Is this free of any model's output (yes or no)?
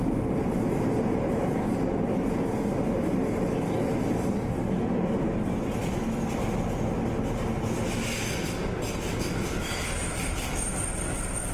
yes